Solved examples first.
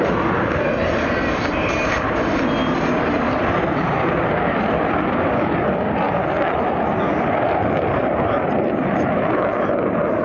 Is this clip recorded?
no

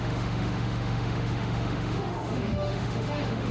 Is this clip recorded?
no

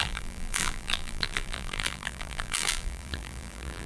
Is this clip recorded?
no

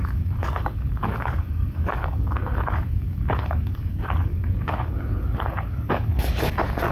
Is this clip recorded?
no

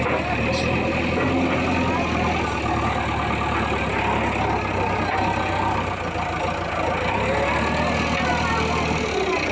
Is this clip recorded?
yes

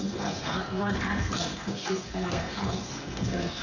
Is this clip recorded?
no